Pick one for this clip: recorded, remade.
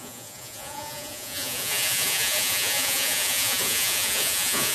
remade